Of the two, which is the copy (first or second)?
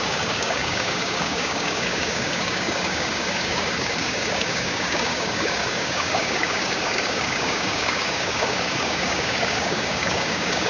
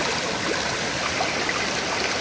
first